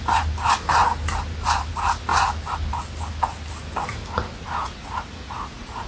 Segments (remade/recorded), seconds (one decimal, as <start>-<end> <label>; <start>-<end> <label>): 0.0-4.6 recorded; 4.6-5.9 remade